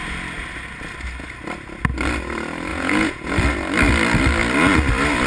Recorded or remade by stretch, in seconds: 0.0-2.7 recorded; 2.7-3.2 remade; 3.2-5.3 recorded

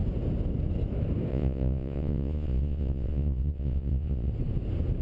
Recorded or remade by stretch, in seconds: 0.0-1.3 recorded; 1.3-4.3 remade; 4.3-5.0 recorded

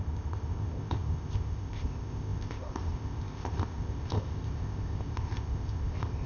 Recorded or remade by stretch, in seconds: 0.0-6.3 remade